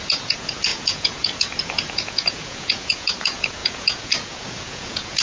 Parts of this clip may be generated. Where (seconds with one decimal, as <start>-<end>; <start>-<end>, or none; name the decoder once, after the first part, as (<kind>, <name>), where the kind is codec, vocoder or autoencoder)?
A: 0.0-5.2 (vocoder, Vocos)